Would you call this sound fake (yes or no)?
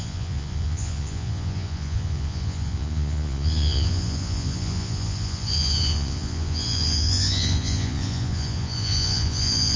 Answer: yes